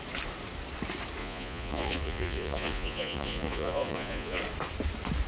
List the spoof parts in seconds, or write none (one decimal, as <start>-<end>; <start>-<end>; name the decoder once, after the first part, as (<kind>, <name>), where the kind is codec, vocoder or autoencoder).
1.2-4.4 (vocoder, Vocos)